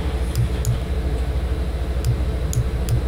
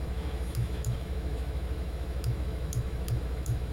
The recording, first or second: first